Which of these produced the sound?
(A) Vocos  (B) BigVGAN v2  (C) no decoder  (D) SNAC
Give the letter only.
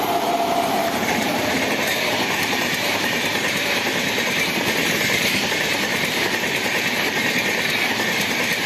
B